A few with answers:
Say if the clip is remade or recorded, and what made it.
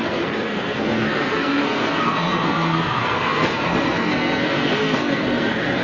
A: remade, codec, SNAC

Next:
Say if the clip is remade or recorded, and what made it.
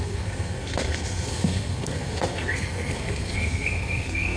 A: remade, codec, SNAC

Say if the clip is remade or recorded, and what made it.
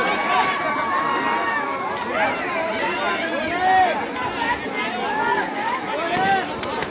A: recorded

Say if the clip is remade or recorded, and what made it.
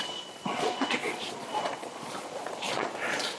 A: remade, vocoder, Vocos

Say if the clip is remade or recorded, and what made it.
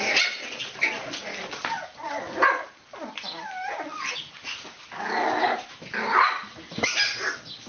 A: recorded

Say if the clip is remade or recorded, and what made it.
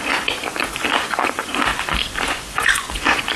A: remade, vocoder, Vocos